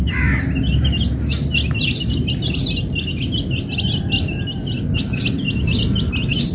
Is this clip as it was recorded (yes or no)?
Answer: yes